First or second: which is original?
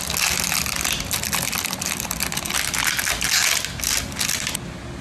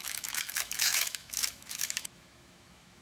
first